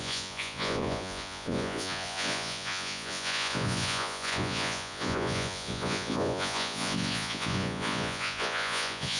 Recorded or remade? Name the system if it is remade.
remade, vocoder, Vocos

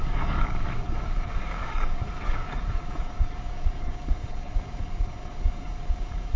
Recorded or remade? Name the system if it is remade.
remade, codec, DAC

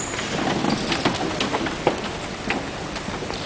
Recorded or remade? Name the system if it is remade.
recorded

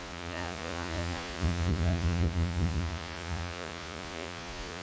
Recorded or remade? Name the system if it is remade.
remade, vocoder, Vocos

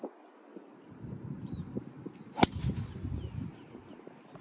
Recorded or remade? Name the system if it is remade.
recorded